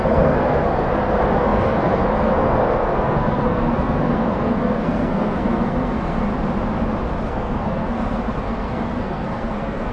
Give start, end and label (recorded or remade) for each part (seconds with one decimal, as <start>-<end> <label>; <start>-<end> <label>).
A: 0.0-6.3 remade; 6.3-7.1 recorded; 7.1-9.9 remade